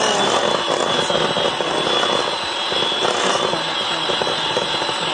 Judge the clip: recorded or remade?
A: recorded